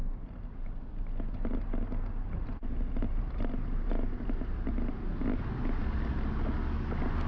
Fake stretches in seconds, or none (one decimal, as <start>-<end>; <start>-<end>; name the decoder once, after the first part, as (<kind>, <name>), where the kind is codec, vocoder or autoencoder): none